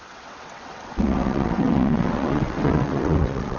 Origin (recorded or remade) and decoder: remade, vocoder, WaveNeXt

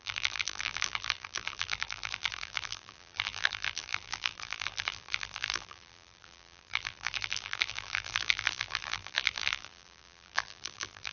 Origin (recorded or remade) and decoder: remade, vocoder, BigVGAN v2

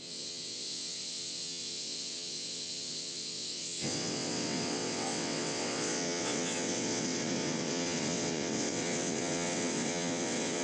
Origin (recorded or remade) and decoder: remade, vocoder, WaveNeXt